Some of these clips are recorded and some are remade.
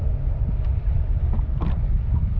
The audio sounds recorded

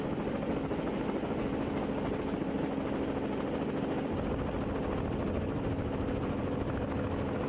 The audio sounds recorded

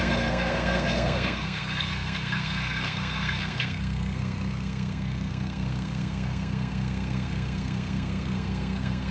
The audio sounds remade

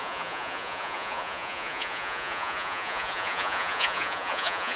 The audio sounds remade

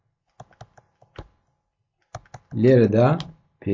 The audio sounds recorded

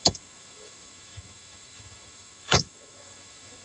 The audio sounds remade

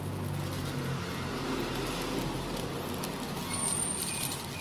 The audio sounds recorded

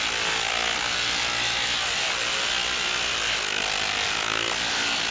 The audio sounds recorded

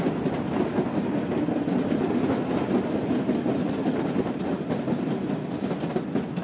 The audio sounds recorded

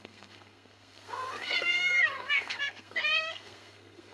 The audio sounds remade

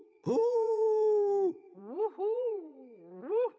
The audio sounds remade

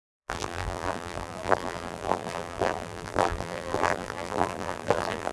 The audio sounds remade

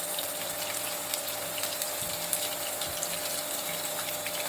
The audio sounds recorded